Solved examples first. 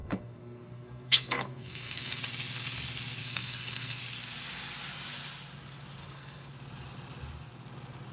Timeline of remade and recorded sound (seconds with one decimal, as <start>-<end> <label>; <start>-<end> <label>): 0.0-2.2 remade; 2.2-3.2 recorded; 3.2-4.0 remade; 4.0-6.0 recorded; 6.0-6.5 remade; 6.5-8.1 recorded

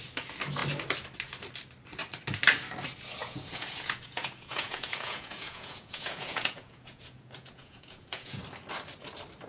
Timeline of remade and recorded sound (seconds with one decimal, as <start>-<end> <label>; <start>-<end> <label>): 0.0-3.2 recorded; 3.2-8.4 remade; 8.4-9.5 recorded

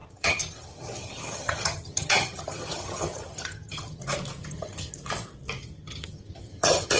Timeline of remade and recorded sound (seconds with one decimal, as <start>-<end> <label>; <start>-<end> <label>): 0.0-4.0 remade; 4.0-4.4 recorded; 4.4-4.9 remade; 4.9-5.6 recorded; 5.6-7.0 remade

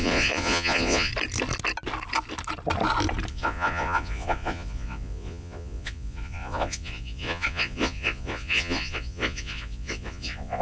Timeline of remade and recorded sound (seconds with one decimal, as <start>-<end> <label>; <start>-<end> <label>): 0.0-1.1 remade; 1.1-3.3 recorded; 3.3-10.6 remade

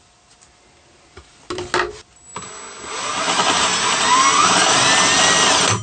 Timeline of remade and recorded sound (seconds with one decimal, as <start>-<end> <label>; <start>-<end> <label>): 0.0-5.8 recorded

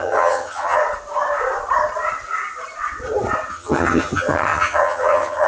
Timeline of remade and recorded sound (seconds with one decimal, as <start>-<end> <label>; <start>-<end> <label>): 0.0-0.8 remade; 0.8-3.5 recorded; 3.5-5.5 remade

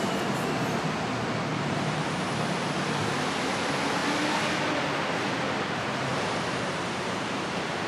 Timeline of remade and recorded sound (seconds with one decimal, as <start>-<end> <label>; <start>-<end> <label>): 0.0-1.5 recorded; 1.5-2.3 remade; 2.3-6.1 recorded; 6.1-7.4 remade; 7.4-7.9 recorded

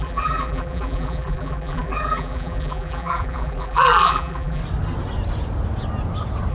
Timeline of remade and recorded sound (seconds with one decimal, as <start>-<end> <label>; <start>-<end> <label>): 0.0-4.6 remade; 4.6-6.5 recorded